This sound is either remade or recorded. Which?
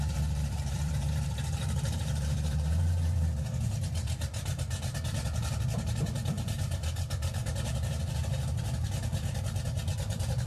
remade